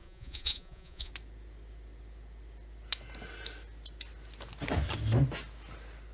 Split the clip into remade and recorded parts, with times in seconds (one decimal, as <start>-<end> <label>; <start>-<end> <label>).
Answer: 0.0-1.1 remade; 1.1-6.1 recorded